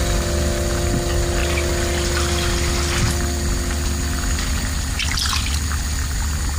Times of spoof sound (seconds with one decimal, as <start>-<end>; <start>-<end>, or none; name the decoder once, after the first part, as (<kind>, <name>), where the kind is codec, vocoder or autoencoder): 1.4-5.4 (vocoder, BigVGAN v2)